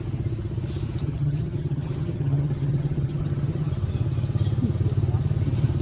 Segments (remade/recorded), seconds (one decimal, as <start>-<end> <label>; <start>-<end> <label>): 0.0-1.0 recorded; 1.0-3.7 remade; 3.7-5.8 recorded